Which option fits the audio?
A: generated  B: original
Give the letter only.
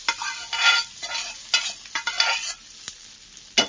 B